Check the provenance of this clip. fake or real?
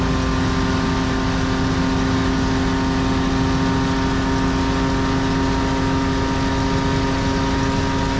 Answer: real